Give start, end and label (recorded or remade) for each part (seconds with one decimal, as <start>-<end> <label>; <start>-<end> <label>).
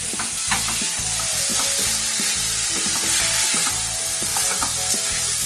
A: 0.0-5.5 recorded